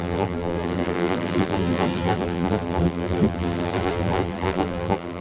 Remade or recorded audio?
remade